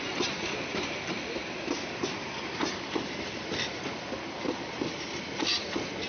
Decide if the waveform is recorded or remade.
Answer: recorded